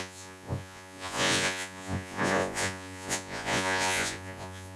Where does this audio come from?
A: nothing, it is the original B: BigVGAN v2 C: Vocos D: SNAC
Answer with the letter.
C